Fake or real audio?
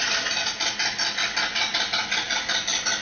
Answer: real